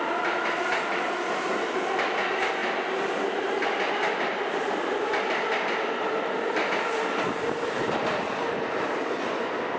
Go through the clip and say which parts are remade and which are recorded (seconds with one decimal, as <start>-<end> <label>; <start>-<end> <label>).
0.0-9.8 recorded